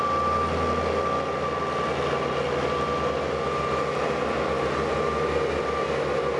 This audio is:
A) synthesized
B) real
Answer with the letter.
B